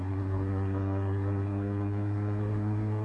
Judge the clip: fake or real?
fake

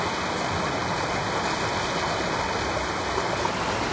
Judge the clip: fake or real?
real